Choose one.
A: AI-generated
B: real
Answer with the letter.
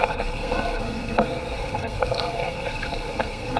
A